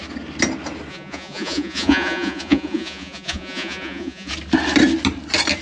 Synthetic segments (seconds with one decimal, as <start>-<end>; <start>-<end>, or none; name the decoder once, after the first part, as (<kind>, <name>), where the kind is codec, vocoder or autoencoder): 0.9-4.3 (vocoder, Vocos)